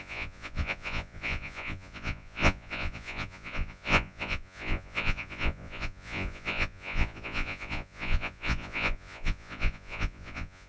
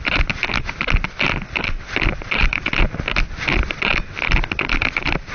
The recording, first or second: second